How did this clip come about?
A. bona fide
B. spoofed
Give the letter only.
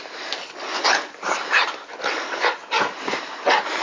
A